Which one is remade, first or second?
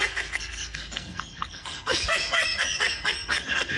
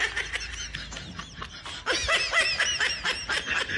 first